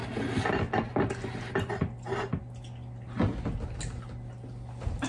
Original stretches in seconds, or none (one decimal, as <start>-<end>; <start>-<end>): 0.0-5.1

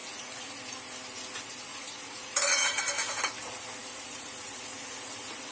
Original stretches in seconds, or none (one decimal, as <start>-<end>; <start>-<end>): 0.6-1.7; 2.8-3.8

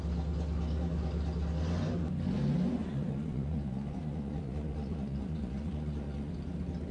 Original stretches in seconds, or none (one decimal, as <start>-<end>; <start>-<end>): 0.0-2.8; 6.3-6.9